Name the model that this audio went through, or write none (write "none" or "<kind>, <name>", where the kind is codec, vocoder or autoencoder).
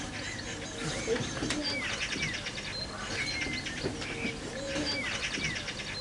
none